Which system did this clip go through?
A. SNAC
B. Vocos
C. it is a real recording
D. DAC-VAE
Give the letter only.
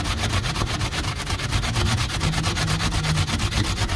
C